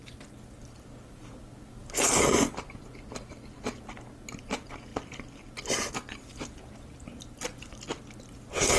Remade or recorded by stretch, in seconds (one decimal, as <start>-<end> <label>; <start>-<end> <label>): 0.0-8.8 recorded